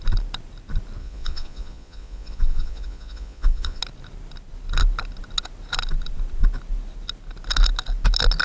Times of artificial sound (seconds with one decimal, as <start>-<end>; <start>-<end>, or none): 1.0-3.8